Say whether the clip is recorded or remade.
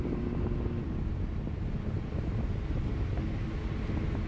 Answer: recorded